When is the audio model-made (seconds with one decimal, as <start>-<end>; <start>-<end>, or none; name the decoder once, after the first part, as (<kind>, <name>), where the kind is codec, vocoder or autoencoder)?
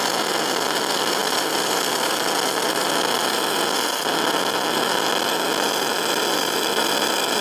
1.2-2.1 (vocoder, BigVGAN v2)